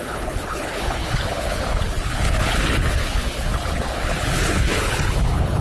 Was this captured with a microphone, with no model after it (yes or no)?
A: no